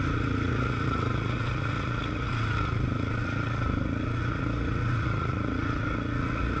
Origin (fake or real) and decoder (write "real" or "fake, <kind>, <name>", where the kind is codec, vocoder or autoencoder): fake, vocoder, Vocos